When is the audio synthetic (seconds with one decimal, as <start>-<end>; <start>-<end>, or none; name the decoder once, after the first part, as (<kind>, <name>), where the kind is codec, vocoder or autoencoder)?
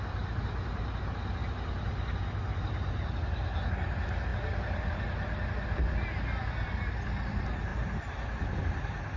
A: none